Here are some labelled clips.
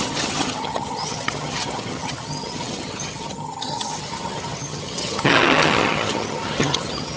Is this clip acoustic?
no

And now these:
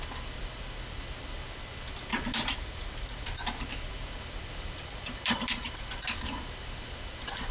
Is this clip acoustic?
yes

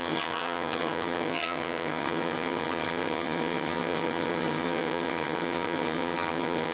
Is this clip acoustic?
no